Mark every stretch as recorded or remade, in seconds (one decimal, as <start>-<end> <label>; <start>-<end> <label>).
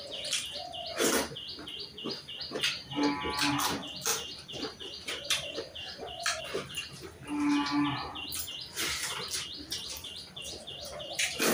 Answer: 0.0-4.1 recorded; 4.1-6.4 remade; 6.4-11.5 recorded